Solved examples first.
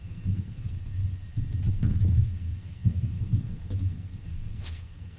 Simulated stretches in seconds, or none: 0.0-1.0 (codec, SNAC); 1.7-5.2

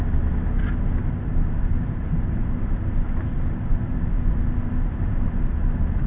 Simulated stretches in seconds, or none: 1.0-4.4 (vocoder, BigVGAN v2)

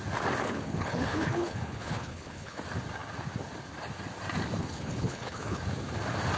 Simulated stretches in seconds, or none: 0.4-2.6 (codec, HILCodec); 4.6-5.6

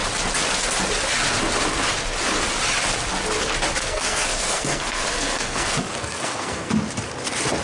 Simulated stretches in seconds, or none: 3.8-6.7 (codec, SNAC)